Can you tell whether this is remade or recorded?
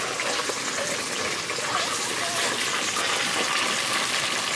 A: recorded